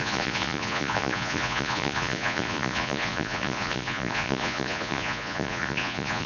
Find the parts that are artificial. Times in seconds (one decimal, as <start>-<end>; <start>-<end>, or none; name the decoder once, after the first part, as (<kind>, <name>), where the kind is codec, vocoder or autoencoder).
0.0-6.3 (vocoder, Vocos)